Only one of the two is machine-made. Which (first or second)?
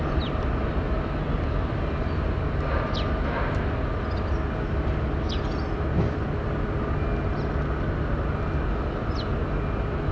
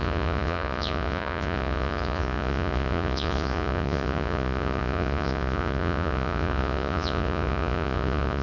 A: second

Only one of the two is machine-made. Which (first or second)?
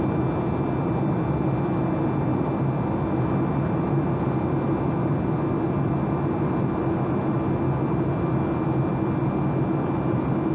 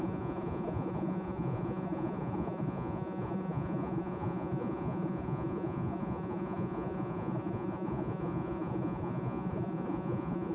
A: second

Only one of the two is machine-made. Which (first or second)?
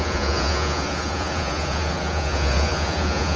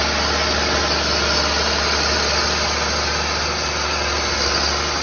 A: first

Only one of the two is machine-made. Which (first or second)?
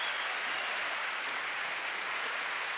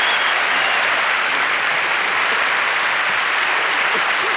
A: first